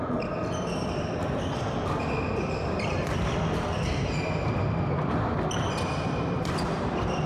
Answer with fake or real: fake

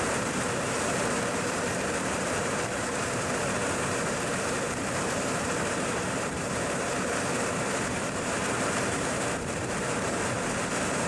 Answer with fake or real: fake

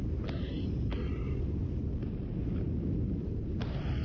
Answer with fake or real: real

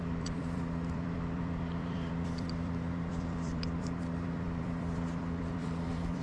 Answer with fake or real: fake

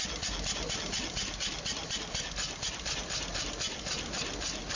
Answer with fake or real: real